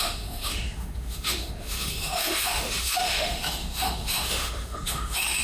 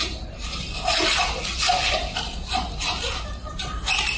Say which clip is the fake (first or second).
first